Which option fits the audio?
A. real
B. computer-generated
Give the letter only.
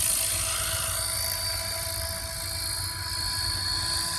A